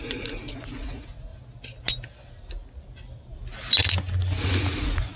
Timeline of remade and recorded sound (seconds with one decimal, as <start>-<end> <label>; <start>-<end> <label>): 0.0-1.3 remade; 1.3-4.4 recorded; 4.4-5.2 remade